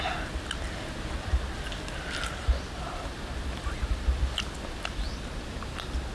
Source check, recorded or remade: recorded